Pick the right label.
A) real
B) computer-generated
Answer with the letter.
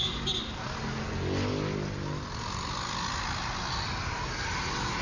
A